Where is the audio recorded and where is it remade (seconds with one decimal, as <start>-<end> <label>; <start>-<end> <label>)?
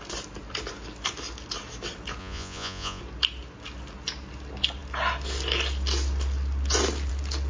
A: 0.0-2.2 recorded; 2.2-3.0 remade; 3.0-7.5 recorded